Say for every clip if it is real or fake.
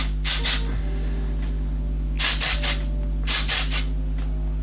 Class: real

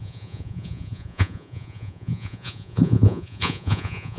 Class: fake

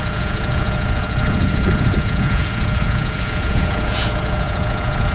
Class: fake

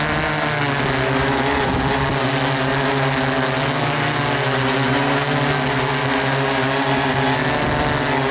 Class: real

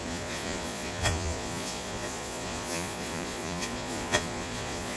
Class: fake